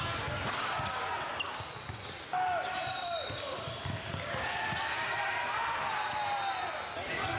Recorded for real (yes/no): yes